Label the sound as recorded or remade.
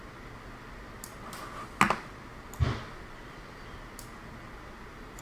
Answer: recorded